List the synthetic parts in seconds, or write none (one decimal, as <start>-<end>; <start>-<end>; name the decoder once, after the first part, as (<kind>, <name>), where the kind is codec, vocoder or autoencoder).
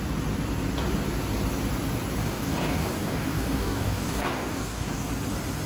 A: 2.2-5.1 (codec, DAC)